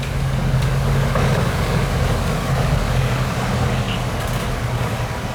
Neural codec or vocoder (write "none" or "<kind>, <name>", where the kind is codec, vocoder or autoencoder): codec, DAC